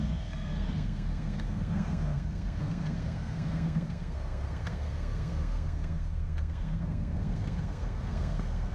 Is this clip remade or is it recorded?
remade